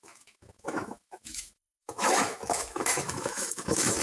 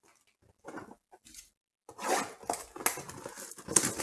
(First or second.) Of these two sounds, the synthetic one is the first